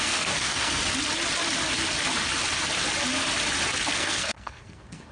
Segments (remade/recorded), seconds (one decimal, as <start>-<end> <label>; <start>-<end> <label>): 0.0-0.8 remade; 0.8-3.9 recorded; 3.9-5.1 remade